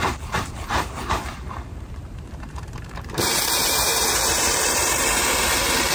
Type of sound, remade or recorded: remade